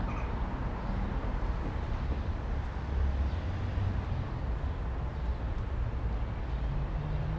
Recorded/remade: recorded